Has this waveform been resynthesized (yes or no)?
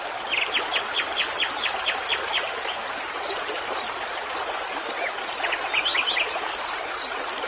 no